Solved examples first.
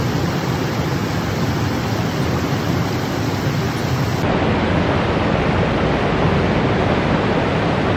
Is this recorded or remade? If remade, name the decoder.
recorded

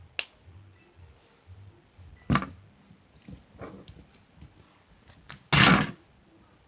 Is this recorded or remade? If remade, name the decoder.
recorded